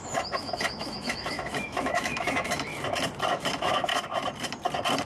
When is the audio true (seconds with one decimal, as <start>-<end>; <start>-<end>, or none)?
2.7-3.3; 3.9-5.1